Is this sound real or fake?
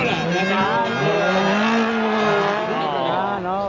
real